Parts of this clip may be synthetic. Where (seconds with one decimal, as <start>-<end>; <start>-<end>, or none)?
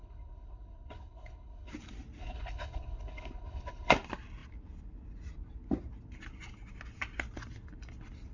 0.0-1.7; 2.2-3.9